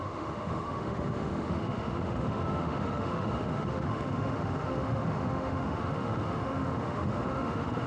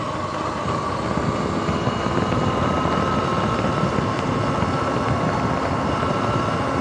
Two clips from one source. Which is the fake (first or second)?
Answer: first